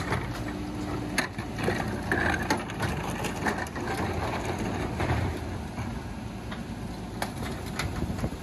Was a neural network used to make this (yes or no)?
no